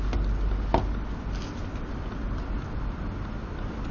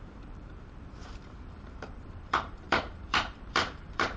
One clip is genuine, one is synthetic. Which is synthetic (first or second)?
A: second